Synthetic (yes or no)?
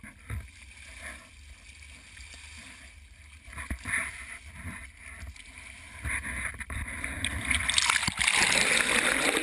no